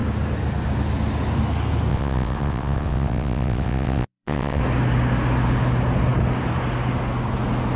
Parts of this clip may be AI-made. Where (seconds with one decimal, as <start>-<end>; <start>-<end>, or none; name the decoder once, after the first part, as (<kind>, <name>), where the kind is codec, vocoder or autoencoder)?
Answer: 1.9-4.6 (vocoder, WaveNeXt)